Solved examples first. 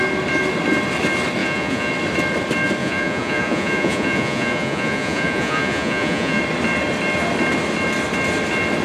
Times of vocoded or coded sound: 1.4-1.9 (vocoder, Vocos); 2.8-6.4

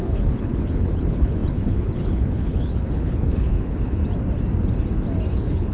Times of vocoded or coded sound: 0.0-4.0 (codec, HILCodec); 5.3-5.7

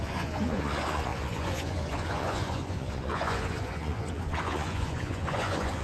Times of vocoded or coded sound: 0.0-5.8 (vocoder, Vocos)

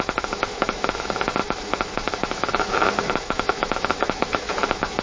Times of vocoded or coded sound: 0.0-5.0 (autoencoder, DAC-VAE)

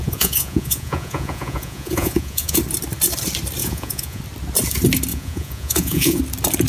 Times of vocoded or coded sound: 0.0-2.6 (vocoder, Vocos); 3.6-4.2; 5.1-6.2

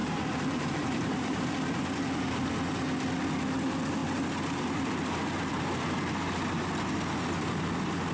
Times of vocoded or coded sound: 0.0-1.5 (vocoder, BigVGAN v2)